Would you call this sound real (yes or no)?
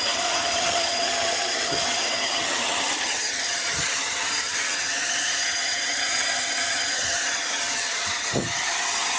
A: no